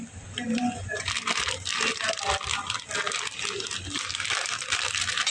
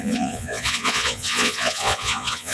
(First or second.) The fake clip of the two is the second